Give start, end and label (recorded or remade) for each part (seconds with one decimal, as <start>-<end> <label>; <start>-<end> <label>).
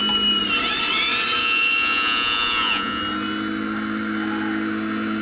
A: 0.0-1.4 recorded; 1.4-3.0 remade; 3.0-5.2 recorded